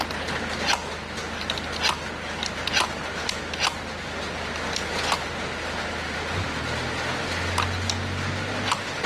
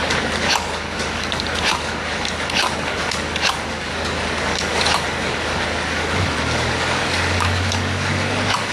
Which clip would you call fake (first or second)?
second